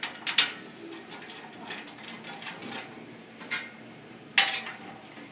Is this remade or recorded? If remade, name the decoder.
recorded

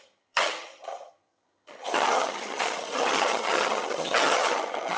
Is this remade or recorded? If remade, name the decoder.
remade, vocoder, HiFi-GAN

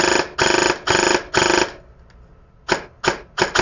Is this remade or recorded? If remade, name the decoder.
recorded